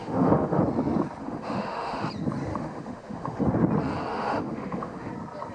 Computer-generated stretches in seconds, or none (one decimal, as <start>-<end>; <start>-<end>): 0.0-0.6; 1.2-2.0; 2.5-3.4; 4.1-5.1